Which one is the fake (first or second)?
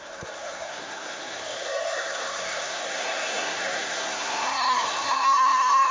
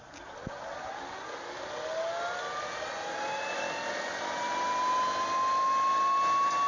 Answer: first